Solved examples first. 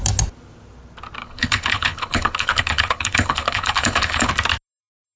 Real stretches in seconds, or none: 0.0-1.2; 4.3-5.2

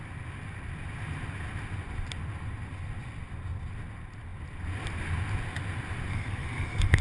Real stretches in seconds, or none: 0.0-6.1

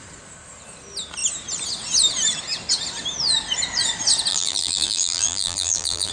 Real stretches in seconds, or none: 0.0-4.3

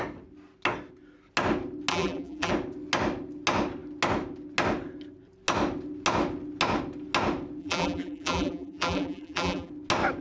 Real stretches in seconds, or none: 0.0-1.9; 2.5-7.6; 9.7-10.2

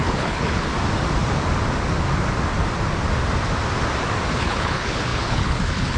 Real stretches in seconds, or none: 0.7-4.3